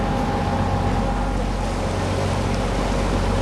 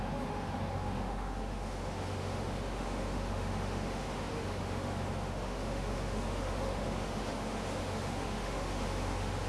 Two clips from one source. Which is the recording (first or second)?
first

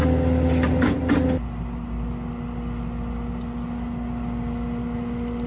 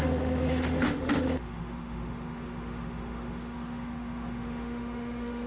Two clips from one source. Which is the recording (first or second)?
first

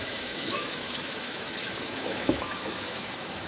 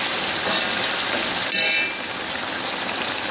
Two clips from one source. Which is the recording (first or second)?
second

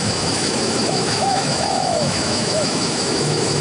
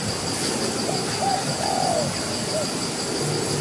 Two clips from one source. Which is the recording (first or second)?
second